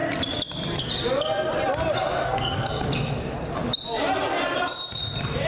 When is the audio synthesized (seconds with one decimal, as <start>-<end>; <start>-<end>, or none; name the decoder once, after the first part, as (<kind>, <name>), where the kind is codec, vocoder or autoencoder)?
2.2-2.7 (codec, SNAC)